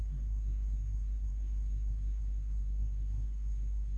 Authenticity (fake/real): fake